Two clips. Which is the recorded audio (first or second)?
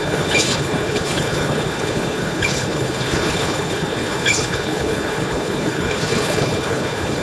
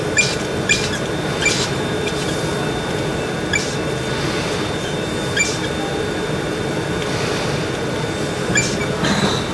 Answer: second